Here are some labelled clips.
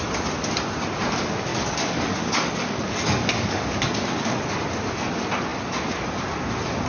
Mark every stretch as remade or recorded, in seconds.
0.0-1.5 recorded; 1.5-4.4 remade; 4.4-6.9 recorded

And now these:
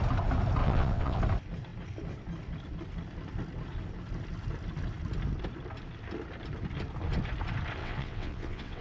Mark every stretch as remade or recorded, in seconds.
0.0-0.6 recorded; 0.6-1.2 remade; 1.2-7.8 recorded; 7.8-8.8 remade

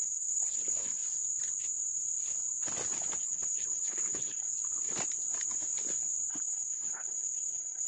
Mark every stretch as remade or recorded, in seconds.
0.0-1.0 remade; 1.0-3.2 recorded; 3.2-4.5 remade; 4.5-6.3 recorded; 6.3-7.9 remade

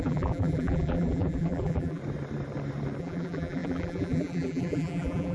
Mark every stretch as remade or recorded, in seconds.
0.0-2.0 remade; 2.0-3.0 recorded; 3.0-5.3 remade

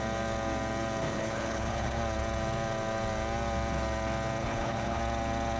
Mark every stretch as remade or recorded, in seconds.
0.0-1.0 recorded; 1.0-2.0 remade; 2.0-4.4 recorded; 4.4-5.0 remade; 5.0-5.6 recorded

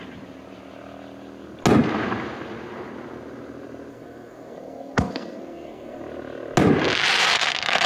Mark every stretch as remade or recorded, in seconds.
0.0-3.9 recorded; 3.9-6.0 remade; 6.0-7.2 recorded; 7.2-7.9 remade